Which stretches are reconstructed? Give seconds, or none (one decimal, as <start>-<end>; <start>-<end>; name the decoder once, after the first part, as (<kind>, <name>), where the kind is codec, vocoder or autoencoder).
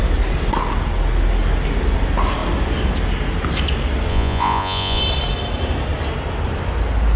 4.1-5.0 (vocoder, Vocos)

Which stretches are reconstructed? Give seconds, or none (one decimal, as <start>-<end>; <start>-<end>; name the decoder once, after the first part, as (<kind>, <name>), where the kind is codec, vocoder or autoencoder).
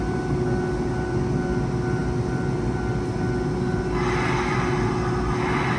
none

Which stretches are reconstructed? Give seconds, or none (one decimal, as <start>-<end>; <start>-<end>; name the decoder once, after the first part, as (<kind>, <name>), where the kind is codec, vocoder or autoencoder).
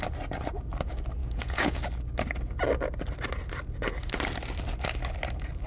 1.2-1.8 (vocoder, Vocos)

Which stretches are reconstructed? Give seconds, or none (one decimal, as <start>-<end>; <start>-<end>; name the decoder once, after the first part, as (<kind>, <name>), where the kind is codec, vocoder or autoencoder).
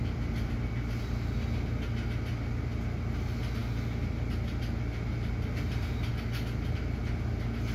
none